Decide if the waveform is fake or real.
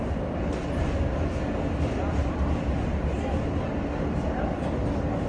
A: real